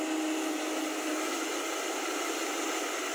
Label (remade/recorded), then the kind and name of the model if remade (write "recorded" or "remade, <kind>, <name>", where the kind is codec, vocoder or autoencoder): recorded